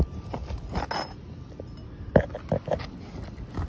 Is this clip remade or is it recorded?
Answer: recorded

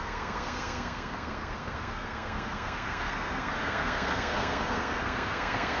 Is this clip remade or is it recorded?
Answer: remade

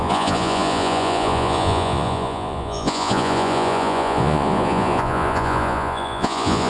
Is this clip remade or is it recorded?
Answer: remade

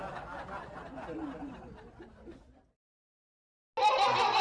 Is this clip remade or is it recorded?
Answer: recorded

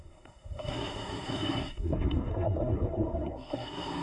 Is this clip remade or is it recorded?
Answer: remade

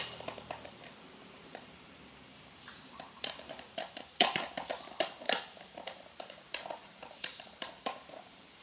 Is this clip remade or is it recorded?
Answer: remade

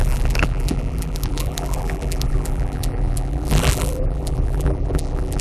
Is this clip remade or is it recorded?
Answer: remade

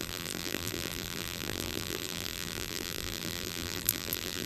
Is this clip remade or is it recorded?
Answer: remade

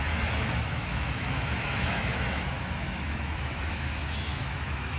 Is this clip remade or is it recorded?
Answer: remade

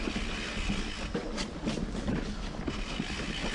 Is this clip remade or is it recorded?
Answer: recorded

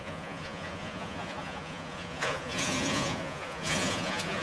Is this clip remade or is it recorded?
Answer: remade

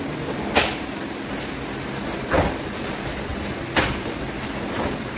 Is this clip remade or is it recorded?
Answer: recorded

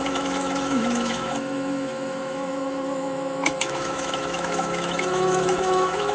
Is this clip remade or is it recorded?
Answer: remade